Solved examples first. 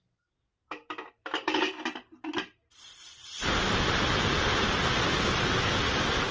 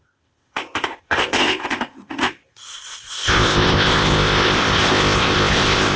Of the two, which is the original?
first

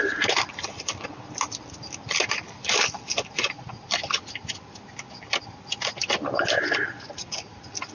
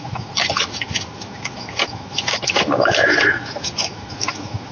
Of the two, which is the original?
first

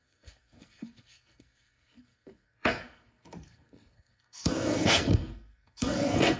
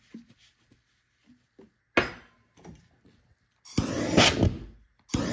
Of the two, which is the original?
second